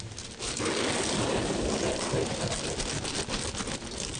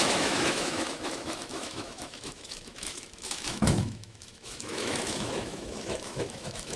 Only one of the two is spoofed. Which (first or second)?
second